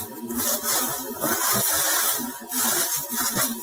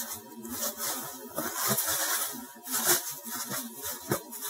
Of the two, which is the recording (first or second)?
second